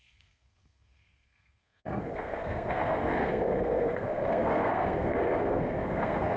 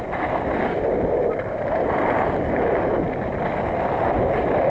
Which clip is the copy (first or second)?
first